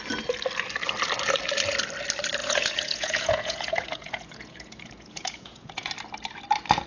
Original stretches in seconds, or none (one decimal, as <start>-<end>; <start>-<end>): 0.0-2.4; 5.9-6.9